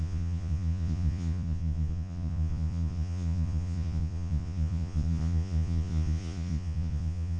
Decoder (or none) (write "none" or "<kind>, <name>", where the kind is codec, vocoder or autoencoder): vocoder, Vocos